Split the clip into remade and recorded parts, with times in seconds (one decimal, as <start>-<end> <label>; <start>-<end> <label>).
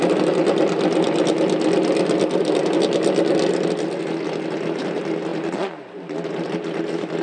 0.0-7.2 recorded